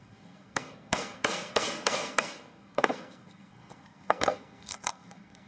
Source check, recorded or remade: remade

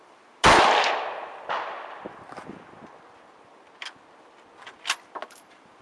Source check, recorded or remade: recorded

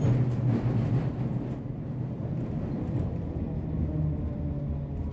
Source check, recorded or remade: recorded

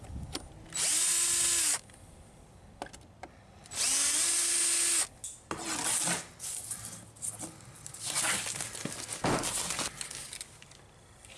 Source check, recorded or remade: recorded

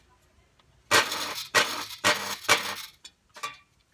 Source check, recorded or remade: recorded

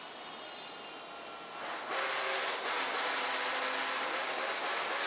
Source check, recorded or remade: recorded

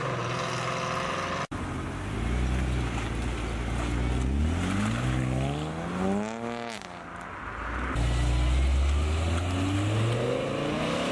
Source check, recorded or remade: recorded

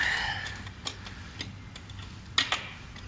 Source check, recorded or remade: recorded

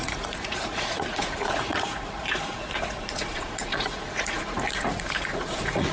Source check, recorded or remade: remade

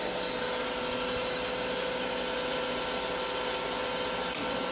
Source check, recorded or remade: recorded